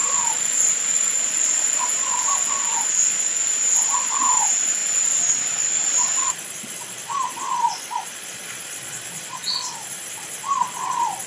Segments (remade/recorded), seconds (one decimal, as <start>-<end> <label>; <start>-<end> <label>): 0.0-11.3 remade